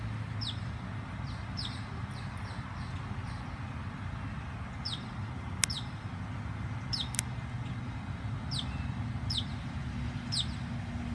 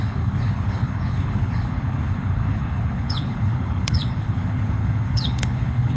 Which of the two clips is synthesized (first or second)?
second